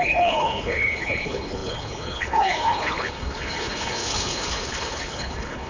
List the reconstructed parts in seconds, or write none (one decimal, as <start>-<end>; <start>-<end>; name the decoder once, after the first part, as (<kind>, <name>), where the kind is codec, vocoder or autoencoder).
0.0-5.7 (codec, HILCodec)